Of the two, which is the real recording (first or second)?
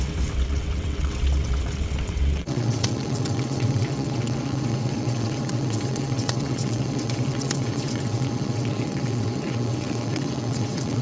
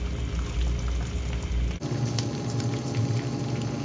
second